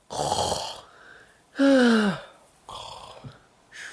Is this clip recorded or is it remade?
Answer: recorded